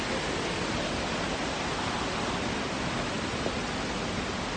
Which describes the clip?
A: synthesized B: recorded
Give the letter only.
B